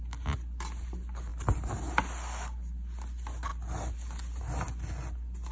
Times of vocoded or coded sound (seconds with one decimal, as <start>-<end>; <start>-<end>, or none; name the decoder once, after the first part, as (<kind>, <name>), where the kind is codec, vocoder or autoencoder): none